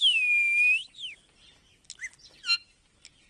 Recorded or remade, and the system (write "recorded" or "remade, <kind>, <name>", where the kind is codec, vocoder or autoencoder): recorded